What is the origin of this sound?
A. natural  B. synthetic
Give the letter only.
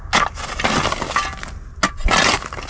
A